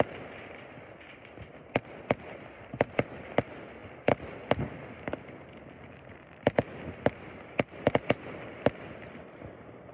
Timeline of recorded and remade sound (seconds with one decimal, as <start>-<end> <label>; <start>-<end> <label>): 0.0-9.9 recorded